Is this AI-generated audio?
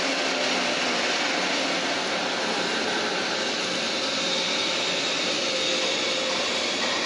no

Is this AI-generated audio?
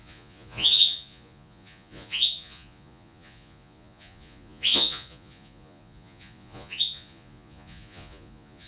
yes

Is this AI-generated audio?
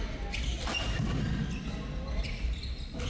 no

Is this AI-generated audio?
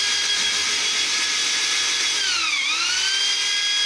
no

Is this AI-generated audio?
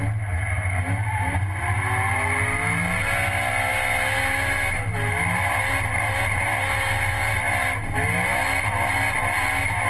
no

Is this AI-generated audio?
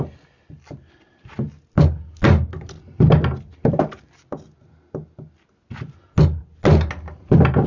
no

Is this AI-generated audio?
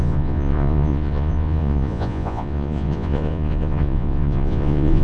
yes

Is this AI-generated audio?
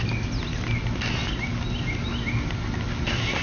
no